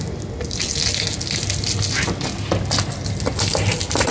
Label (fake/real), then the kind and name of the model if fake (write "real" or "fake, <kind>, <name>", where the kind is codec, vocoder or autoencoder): real